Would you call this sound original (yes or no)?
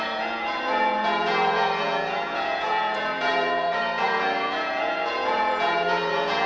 no